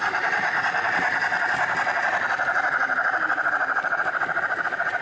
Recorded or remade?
recorded